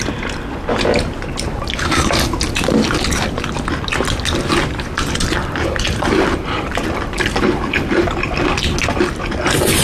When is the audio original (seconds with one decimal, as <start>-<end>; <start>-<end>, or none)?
0.0-4.6; 8.1-9.8